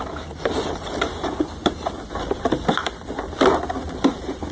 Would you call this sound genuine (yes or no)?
yes